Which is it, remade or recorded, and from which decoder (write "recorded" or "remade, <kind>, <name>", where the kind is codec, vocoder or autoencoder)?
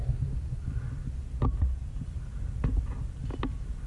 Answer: recorded